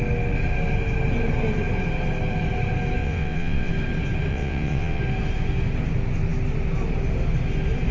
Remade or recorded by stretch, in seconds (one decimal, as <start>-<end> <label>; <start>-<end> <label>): 0.0-3.0 recorded; 3.0-3.7 remade; 3.7-4.3 recorded; 4.3-5.0 remade; 5.0-7.9 recorded